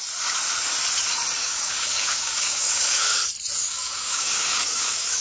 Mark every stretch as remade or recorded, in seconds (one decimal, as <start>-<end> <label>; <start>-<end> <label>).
0.0-1.4 recorded; 1.4-3.2 remade; 3.2-3.6 recorded; 3.6-5.2 remade